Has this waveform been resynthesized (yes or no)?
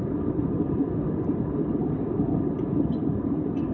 no